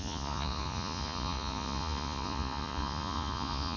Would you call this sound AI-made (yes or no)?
yes